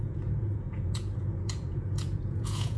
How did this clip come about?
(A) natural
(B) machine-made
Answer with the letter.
B